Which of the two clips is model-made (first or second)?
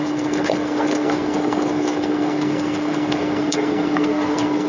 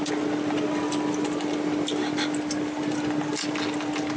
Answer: first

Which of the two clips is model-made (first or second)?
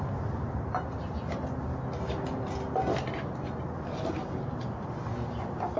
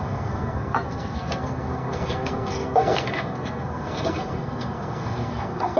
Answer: second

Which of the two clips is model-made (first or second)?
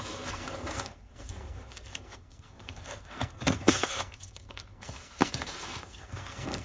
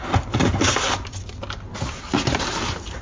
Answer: first